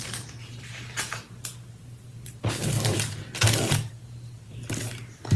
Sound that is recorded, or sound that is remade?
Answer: recorded